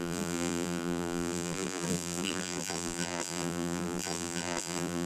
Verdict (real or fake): fake